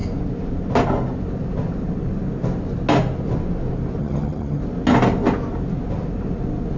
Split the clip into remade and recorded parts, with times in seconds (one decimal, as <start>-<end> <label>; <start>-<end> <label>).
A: 0.0-4.0 recorded; 4.0-4.6 remade; 4.6-6.8 recorded